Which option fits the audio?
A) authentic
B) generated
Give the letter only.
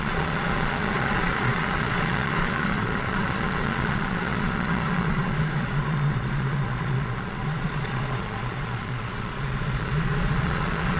B